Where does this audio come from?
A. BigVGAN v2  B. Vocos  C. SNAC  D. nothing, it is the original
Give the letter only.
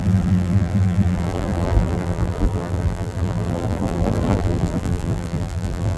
A